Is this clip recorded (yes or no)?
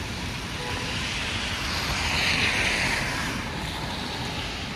yes